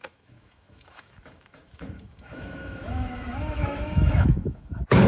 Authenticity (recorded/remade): remade